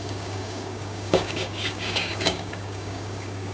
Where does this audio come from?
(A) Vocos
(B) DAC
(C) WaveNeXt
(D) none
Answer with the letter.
B